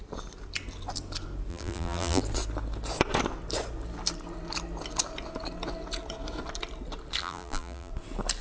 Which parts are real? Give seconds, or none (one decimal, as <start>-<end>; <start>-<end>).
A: 0.0-1.5; 2.2-7.2; 7.9-8.4